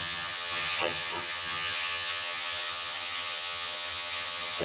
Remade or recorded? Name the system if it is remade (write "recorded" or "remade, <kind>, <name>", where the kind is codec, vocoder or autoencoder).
remade, vocoder, HiFi-GAN